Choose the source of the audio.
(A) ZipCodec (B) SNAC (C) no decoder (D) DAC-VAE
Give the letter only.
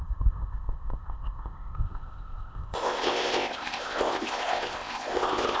A